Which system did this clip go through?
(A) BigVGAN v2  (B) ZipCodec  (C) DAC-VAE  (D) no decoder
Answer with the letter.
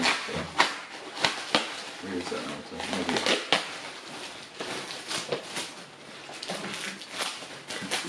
D